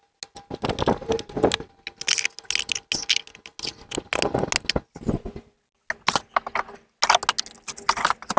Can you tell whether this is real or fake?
real